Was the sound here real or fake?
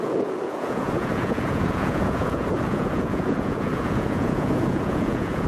fake